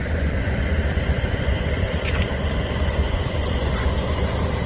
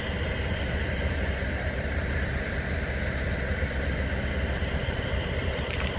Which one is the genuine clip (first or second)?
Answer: second